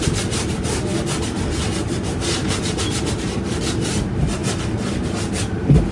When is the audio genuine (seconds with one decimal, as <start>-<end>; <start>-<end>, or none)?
0.0-5.9